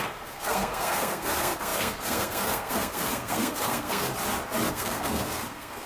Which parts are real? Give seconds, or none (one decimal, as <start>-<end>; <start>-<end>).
4.1-4.7